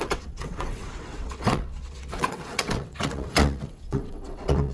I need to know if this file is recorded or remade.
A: remade